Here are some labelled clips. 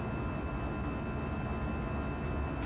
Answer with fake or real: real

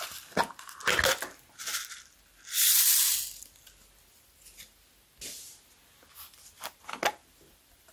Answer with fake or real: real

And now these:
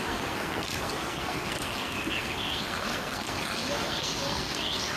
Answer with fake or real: fake